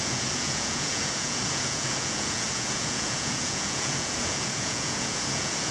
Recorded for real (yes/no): no